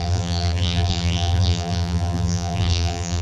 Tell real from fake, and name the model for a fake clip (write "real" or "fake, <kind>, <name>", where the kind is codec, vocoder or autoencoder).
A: fake, vocoder, BigVGAN v2